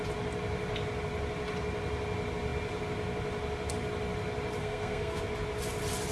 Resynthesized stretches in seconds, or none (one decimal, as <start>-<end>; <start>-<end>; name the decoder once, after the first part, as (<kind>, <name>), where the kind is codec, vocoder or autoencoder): 4.6-5.2 (codec, SNAC)